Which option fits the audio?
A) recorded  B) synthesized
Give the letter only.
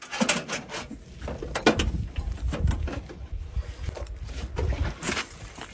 A